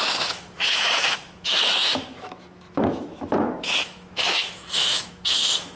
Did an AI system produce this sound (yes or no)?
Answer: yes